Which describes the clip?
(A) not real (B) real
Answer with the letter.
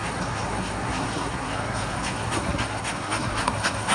A